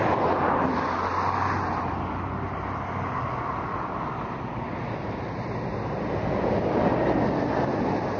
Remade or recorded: recorded